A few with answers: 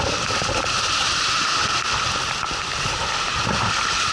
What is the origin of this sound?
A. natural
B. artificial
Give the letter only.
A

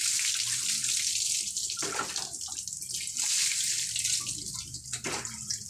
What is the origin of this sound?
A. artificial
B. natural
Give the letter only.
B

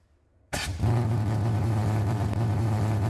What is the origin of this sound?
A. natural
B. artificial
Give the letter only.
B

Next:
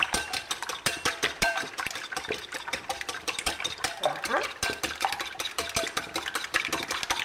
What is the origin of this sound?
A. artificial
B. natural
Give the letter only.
A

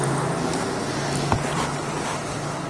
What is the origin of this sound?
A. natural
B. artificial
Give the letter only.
A